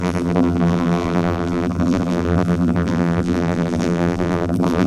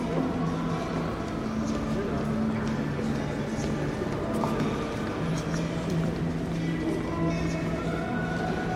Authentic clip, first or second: second